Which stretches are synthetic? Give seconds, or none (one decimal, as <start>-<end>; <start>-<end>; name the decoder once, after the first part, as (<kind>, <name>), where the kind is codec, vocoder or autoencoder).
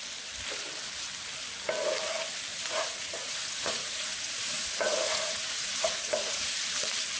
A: 2.5-6.8 (vocoder, Vocos)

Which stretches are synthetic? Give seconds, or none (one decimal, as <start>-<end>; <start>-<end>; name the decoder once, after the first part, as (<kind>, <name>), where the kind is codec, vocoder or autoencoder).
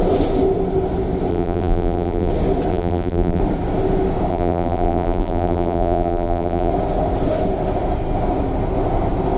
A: 1.3-2.3 (vocoder, BigVGAN v2); 2.7-3.4; 4.3-6.7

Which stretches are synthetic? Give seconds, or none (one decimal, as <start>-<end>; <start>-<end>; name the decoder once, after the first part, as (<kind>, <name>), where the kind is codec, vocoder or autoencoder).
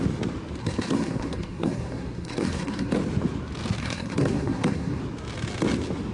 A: 0.6-2.9 (codec, SNAC); 3.8-5.0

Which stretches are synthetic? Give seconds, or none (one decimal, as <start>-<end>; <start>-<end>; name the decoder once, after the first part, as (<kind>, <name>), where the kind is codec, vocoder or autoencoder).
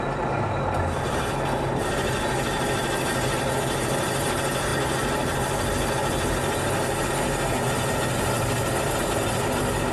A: none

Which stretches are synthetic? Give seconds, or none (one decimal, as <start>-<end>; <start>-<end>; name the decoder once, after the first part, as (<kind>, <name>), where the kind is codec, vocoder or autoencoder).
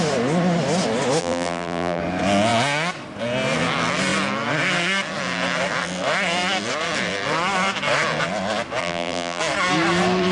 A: 1.2-2.0 (vocoder, BigVGAN v2); 8.8-9.4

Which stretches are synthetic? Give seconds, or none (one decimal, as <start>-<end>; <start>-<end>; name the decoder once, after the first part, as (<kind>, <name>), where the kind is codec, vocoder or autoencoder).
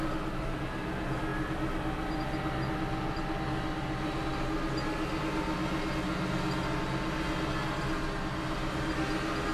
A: none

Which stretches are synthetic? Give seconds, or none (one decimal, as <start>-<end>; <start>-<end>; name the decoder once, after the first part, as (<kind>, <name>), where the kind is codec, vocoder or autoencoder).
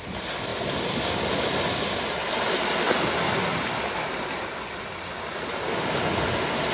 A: none